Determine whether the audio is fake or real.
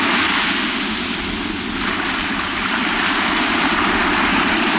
fake